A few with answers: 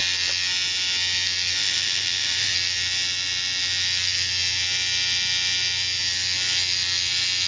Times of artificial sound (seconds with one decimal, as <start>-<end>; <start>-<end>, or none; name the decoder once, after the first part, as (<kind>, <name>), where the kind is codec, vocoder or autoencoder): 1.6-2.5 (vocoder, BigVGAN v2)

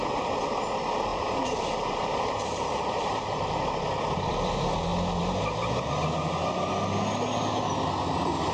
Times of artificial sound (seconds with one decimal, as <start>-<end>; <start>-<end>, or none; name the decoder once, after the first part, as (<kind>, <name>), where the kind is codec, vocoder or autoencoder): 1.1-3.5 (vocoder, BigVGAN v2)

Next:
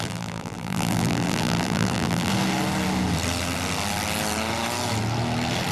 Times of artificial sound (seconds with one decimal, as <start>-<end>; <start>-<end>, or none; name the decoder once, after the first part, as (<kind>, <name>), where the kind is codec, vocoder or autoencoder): 0.0-2.3 (vocoder, BigVGAN v2)

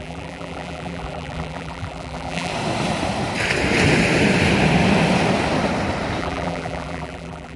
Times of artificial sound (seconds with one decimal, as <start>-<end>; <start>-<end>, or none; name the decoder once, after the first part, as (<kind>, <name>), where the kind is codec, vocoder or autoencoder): 0.0-2.5 (vocoder, BigVGAN v2); 6.2-7.6